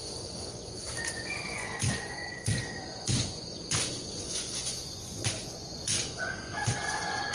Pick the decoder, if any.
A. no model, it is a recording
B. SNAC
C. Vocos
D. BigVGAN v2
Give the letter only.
C